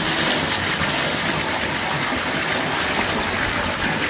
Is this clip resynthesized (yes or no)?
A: no